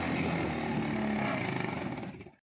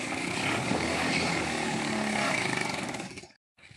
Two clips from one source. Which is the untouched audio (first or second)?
first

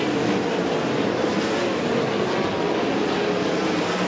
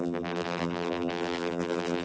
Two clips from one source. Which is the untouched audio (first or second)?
first